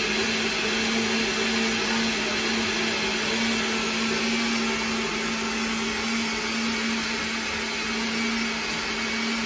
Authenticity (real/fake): real